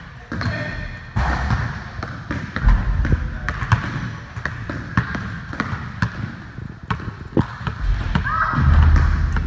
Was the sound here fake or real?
real